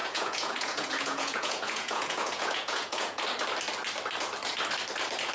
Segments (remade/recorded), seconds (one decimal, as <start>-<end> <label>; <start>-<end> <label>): 0.0-3.2 remade; 3.2-5.3 recorded